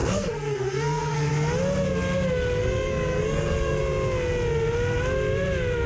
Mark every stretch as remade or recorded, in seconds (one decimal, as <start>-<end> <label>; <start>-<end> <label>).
0.0-1.3 remade; 1.3-2.6 recorded; 2.6-3.8 remade; 3.8-5.9 recorded

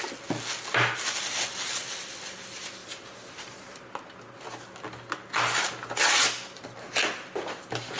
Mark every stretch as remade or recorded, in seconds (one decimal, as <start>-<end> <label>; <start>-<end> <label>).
0.0-8.0 recorded

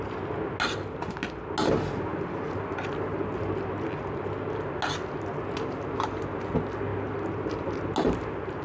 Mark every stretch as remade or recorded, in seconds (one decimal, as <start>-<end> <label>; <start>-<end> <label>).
0.0-2.1 recorded; 2.1-4.0 remade; 4.0-6.9 recorded; 6.9-7.7 remade; 7.7-8.6 recorded

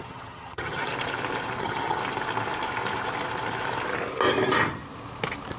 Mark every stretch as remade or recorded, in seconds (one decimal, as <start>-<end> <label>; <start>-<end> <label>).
0.0-0.9 remade; 0.9-1.6 recorded; 1.6-2.0 remade; 2.0-5.6 recorded

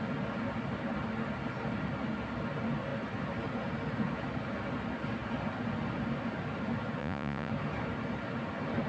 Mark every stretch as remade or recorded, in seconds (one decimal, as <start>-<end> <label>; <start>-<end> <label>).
0.0-7.0 recorded; 7.0-7.5 remade; 7.5-8.9 recorded